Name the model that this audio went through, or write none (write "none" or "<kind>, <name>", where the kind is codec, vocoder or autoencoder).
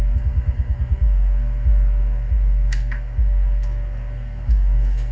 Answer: codec, SNAC